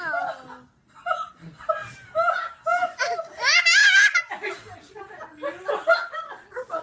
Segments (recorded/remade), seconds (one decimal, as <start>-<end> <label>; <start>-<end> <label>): 0.0-6.8 recorded